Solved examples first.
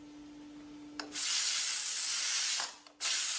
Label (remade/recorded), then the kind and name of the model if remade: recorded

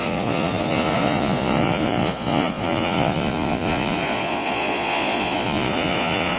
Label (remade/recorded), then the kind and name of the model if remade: remade, vocoder, Vocos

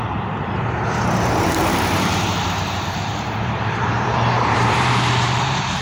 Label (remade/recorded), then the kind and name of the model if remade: remade, vocoder, BigVGAN v2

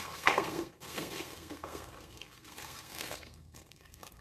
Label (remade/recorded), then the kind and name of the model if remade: remade, codec, SNAC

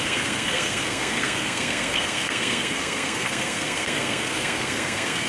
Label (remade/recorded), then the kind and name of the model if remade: remade, codec, SNAC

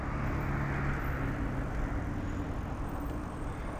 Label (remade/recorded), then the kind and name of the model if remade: recorded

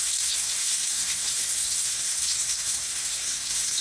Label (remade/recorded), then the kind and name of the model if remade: remade, codec, SNAC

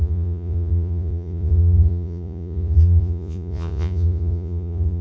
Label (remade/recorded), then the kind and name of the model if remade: remade, vocoder, Vocos